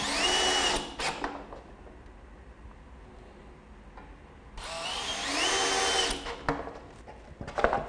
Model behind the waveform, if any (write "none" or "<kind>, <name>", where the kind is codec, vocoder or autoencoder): none